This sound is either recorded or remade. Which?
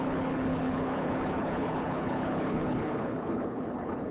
remade